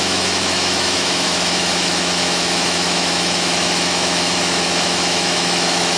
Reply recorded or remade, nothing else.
remade